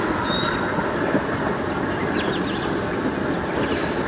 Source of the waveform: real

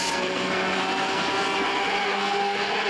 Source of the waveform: fake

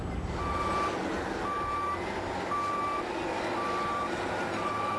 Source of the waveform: real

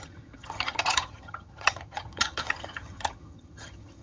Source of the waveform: fake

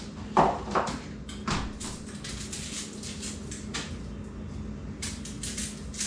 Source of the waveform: real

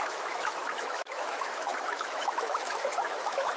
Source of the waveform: fake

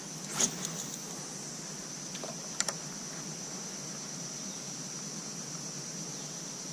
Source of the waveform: real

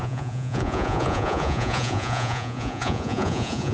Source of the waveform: fake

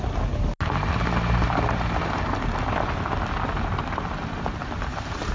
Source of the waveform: real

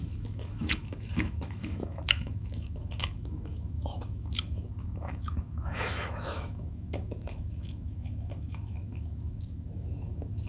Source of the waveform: fake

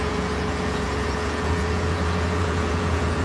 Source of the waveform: fake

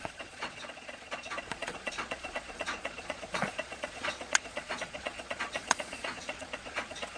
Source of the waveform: fake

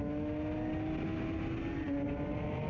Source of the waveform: real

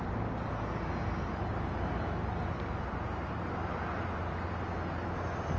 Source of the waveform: real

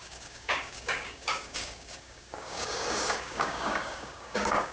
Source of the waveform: fake